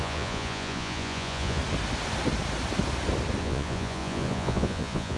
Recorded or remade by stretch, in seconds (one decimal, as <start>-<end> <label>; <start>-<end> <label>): 0.0-1.6 remade; 1.6-3.4 recorded; 3.4-5.2 remade